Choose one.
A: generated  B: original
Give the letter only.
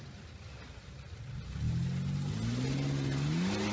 B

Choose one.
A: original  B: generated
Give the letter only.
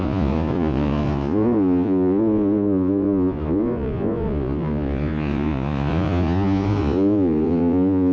B